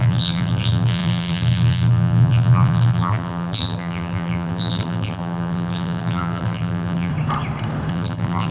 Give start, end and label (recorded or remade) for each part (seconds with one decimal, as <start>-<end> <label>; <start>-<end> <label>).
0.0-7.1 remade; 7.1-7.9 recorded; 7.9-8.5 remade